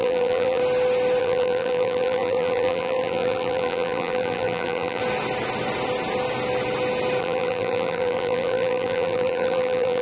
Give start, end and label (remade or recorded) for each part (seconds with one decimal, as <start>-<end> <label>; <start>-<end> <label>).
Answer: 0.0-0.6 remade; 0.6-1.2 recorded; 1.2-5.0 remade; 5.0-7.2 recorded; 7.2-10.0 remade